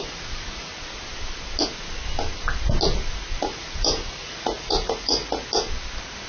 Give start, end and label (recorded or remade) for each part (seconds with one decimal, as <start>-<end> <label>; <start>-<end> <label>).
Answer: 0.0-0.7 remade; 0.7-3.5 recorded; 3.5-5.2 remade; 5.2-6.3 recorded